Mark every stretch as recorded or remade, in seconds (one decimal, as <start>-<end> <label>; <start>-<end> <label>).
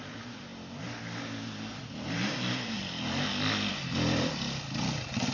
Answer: 0.0-5.3 recorded